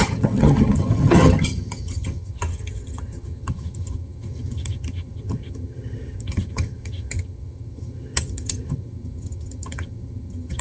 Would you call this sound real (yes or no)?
no